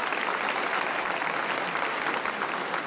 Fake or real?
real